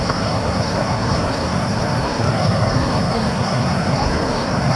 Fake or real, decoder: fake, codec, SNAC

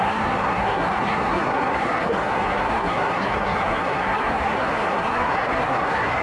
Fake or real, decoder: fake, codec, SNAC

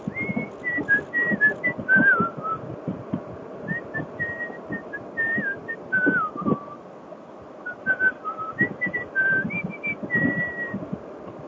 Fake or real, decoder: real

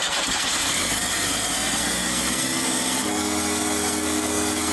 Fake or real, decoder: fake, codec, SNAC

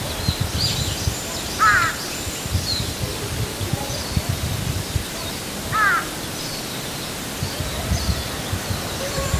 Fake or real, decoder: real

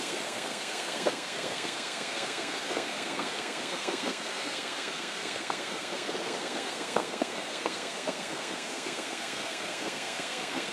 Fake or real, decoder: fake, codec, SNAC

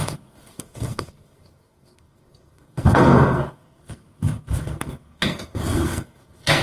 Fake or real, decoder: fake, codec, SNAC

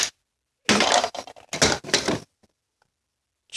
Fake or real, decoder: real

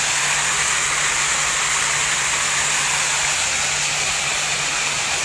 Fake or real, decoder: real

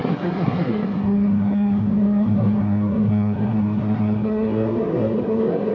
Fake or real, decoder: fake, codec, SNAC